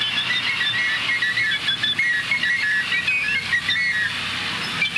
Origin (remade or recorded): recorded